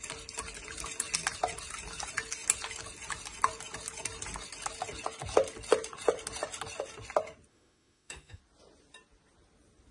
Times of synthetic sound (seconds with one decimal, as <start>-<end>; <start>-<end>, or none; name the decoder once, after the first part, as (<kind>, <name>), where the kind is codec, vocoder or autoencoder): 7.5-8.4 (autoencoder, DAC-VAE)